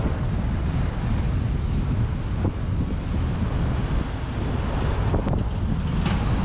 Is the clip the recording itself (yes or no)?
yes